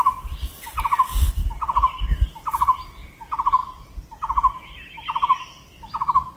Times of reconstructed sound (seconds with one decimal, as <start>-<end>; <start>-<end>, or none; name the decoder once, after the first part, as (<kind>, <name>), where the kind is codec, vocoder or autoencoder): none